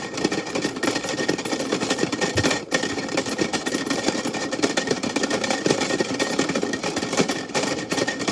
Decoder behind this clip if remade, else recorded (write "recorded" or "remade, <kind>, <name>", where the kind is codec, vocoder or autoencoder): remade, vocoder, BigVGAN v2